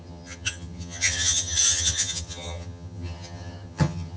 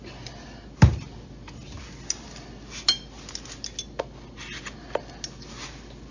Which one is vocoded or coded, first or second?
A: first